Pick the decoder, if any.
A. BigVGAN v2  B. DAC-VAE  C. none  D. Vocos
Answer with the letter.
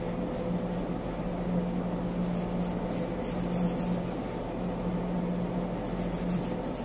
C